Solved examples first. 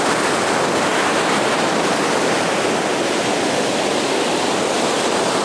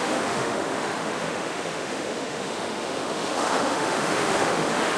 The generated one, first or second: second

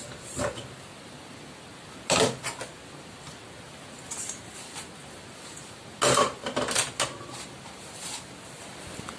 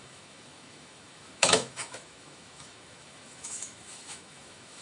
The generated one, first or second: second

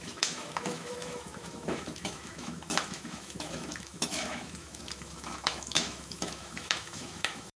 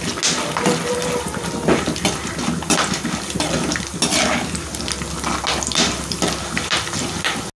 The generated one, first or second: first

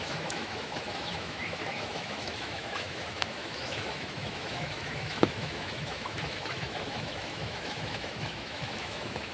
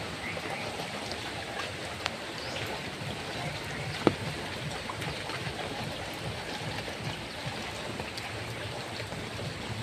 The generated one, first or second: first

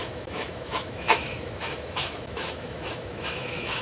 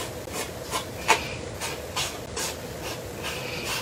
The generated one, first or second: first